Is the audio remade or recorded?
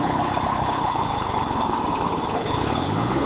remade